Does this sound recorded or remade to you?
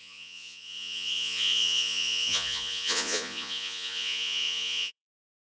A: remade